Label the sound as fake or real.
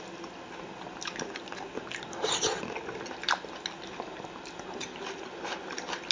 real